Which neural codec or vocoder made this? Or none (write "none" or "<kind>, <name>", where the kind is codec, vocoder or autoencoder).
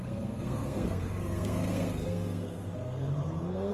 codec, SNAC